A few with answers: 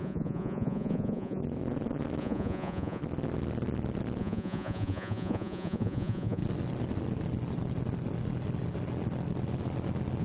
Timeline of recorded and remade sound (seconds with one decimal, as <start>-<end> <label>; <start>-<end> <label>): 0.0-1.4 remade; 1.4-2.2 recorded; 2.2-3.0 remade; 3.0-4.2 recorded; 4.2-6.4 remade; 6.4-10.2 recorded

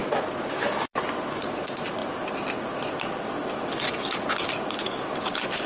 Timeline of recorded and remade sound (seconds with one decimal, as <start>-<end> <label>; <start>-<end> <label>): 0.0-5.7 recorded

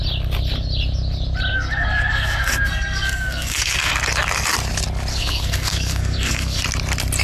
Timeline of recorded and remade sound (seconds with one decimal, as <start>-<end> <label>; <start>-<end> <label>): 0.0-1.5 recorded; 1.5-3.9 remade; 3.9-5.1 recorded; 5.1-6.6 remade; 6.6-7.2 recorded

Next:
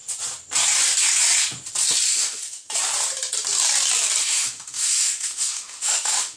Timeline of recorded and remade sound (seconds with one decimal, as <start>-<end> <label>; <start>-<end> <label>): 0.0-2.1 recorded; 2.1-2.7 remade; 2.7-4.2 recorded; 4.2-6.4 remade

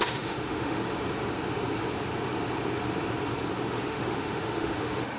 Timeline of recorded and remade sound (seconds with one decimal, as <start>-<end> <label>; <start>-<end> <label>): 0.0-0.8 remade; 0.8-3.9 recorded; 3.9-5.2 remade

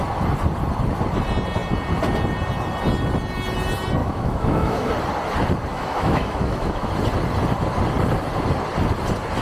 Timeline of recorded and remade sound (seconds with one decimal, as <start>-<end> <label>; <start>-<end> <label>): 0.0-4.0 recorded; 4.0-4.9 remade; 4.9-5.7 recorded; 5.7-6.9 remade; 6.9-9.4 recorded